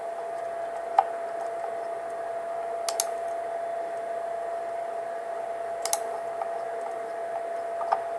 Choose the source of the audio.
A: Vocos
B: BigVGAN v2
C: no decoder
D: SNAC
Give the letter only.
C